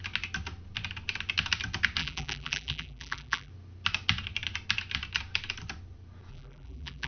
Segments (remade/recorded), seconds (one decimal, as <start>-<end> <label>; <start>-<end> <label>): 0.0-2.0 recorded; 2.0-3.5 remade; 3.5-6.3 recorded; 6.3-7.1 remade